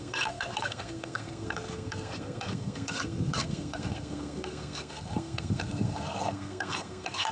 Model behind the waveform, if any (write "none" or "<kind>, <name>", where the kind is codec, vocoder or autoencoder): codec, SNAC